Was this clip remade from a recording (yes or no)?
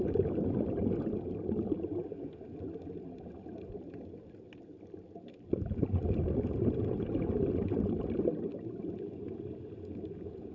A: no